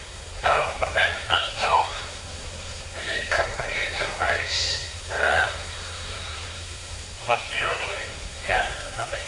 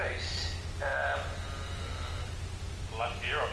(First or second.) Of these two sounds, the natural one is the second